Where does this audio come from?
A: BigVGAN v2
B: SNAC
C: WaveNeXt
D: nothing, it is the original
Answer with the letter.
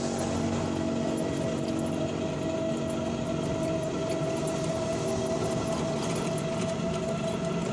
D